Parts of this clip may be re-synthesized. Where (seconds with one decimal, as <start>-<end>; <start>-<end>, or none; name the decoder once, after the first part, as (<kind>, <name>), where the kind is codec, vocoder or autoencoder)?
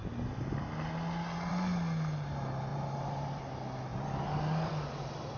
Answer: 2.7-3.4 (vocoder, BigVGAN v2); 3.9-4.7